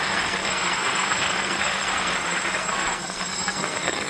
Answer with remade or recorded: remade